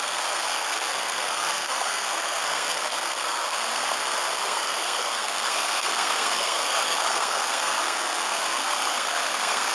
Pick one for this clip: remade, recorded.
remade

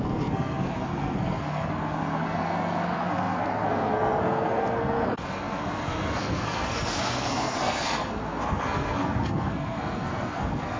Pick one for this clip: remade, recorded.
remade